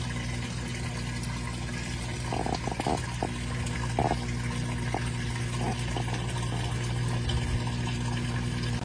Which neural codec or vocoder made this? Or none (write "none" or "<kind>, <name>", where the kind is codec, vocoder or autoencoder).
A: none